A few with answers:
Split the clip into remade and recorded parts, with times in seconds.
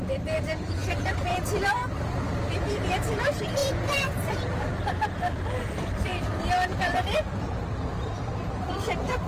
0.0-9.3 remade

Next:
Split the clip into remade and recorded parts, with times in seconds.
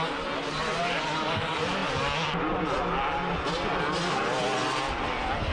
0.0-5.5 recorded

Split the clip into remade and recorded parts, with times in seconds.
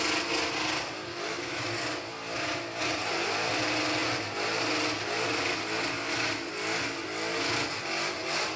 0.0-1.1 recorded; 1.1-1.7 remade; 1.7-8.6 recorded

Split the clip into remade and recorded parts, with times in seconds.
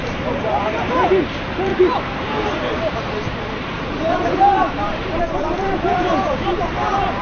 0.0-7.2 remade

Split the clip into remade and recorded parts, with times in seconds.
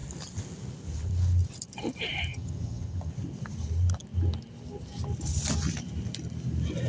0.0-2.3 recorded; 2.3-3.1 remade; 3.1-6.9 recorded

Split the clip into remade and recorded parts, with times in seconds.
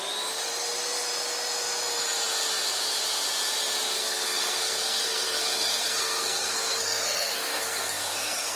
0.0-3.9 recorded; 3.9-8.6 remade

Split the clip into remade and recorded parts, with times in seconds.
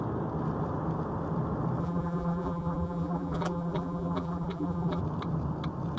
0.0-1.8 recorded; 1.8-5.0 remade; 5.0-6.0 recorded